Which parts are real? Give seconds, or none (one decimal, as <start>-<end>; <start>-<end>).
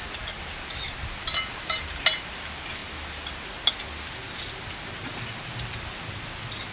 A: 0.0-6.7